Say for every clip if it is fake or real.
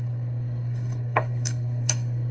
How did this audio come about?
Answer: fake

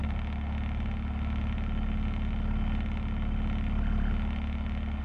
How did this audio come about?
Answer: real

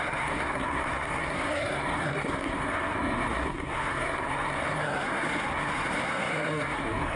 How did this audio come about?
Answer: fake